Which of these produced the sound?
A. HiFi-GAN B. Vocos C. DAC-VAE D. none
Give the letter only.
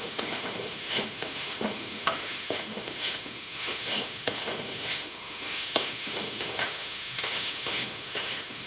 C